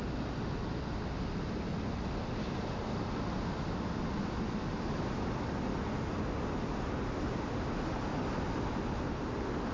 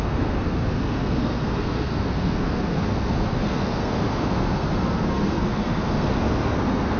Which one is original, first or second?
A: first